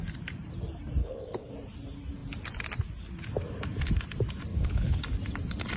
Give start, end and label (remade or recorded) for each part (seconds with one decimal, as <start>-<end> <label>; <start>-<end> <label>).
0.0-1.0 recorded; 1.0-1.5 remade; 1.5-4.5 recorded; 4.5-5.0 remade; 5.0-5.8 recorded